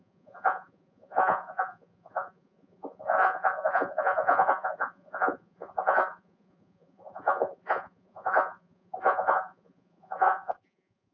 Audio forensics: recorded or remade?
remade